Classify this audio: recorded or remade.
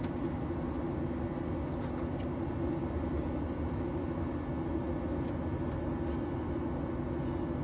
recorded